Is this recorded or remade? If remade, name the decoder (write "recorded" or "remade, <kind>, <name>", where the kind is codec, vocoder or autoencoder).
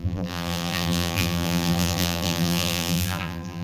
remade, vocoder, BigVGAN v2